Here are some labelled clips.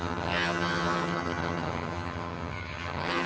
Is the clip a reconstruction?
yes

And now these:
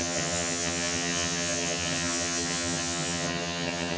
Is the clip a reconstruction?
yes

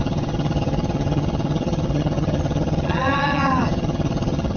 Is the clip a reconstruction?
yes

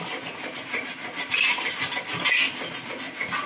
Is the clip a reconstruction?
no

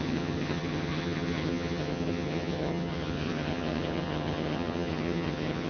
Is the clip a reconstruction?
yes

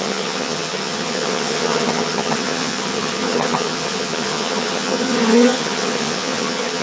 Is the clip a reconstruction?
yes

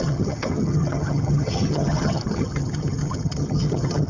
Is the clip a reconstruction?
yes